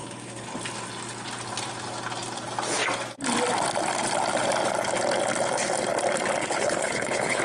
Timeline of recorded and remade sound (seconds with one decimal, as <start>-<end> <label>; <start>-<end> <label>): 0.0-6.4 recorded; 6.4-7.4 remade